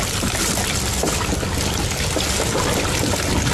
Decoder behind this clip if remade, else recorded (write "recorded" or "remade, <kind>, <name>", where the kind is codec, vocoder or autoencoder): recorded